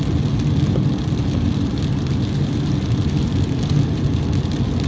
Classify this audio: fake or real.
real